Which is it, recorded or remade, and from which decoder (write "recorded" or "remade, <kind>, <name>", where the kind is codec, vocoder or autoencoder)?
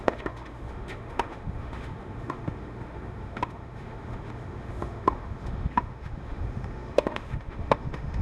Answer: remade, autoencoder, DAC-VAE